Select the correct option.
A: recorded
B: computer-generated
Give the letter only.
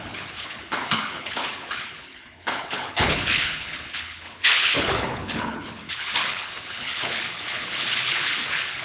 B